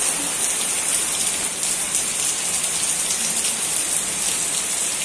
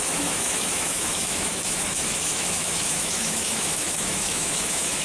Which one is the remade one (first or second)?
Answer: second